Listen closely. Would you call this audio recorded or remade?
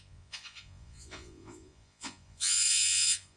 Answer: remade